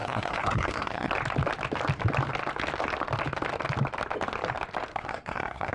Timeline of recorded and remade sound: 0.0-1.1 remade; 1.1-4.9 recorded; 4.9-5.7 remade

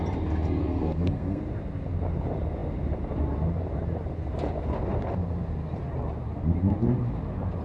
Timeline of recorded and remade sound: 0.0-0.6 recorded; 0.6-1.4 remade; 1.4-7.6 recorded

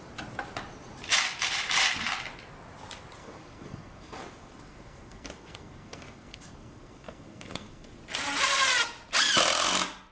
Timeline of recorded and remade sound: 0.0-3.2 recorded; 3.2-8.0 remade; 8.0-10.1 recorded

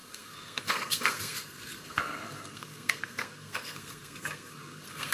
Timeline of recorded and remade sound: 0.0-5.1 remade

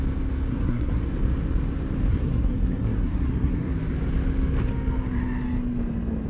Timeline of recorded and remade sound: 0.0-0.5 recorded; 0.5-1.0 remade; 1.0-2.1 recorded; 2.1-3.7 remade; 3.7-6.3 recorded

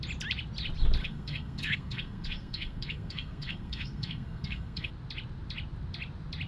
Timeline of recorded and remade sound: 0.0-1.0 recorded; 1.0-4.9 remade; 4.9-6.5 recorded

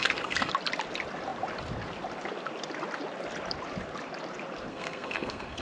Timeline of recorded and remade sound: 0.0-0.5 remade; 0.5-4.7 recorded; 4.7-5.6 remade

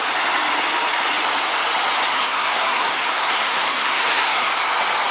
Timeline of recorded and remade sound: 0.0-2.1 recorded; 2.1-4.5 remade; 4.5-5.1 recorded